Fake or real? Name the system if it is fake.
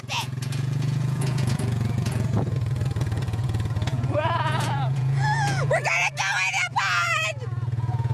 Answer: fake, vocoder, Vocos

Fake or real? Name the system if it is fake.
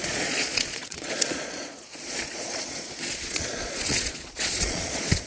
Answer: fake, vocoder, Vocos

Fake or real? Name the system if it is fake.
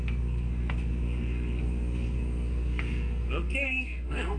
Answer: fake, codec, SNAC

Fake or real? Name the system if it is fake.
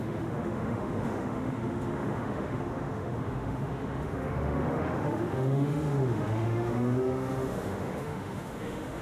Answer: fake, autoencoder, DAC-VAE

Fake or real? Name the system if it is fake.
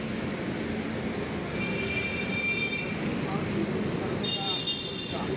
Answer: real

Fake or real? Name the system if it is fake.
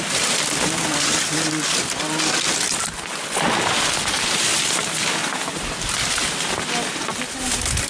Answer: real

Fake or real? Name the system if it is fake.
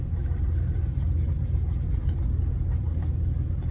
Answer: real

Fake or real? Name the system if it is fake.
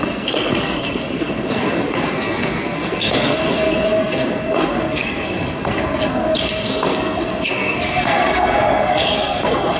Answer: fake, codec, SNAC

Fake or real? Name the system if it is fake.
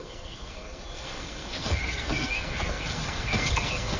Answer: fake, codec, SNAC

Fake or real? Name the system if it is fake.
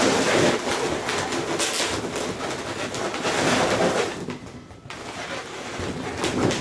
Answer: real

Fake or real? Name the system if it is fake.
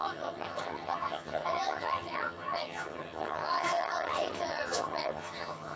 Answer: fake, vocoder, HiFi-GAN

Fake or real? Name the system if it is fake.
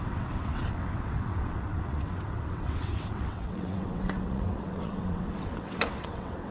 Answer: fake, vocoder, WaveNeXt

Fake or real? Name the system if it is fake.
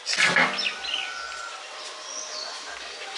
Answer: real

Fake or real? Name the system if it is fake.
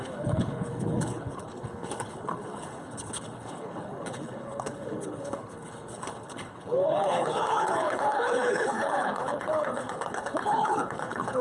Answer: fake, codec, HILCodec